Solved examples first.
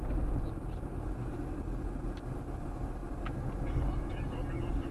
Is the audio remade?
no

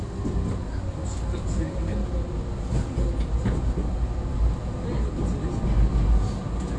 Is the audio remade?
no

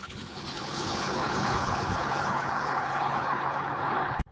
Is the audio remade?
yes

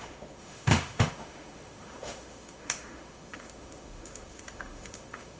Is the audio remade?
yes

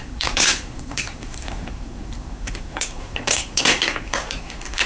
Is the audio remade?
yes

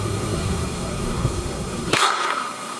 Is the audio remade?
yes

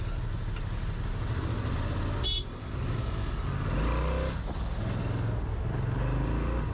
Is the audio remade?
no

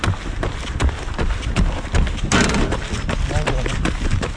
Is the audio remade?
no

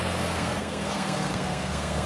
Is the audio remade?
yes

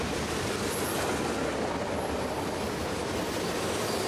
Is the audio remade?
no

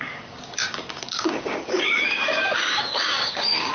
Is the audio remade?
yes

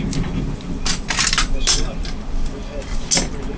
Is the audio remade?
no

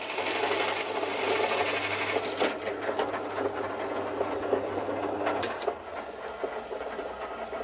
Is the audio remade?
no